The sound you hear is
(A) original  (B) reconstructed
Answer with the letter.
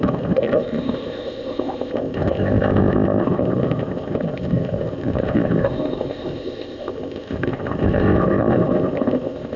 B